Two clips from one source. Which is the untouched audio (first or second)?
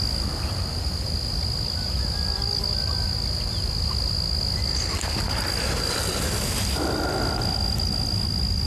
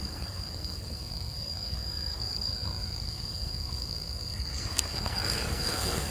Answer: first